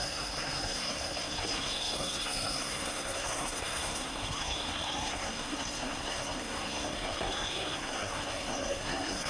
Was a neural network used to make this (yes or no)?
yes